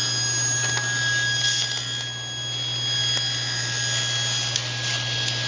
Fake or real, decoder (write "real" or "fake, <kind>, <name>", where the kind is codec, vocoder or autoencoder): real